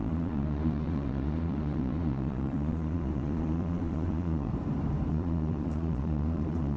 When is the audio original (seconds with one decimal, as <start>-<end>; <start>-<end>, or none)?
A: 4.5-5.1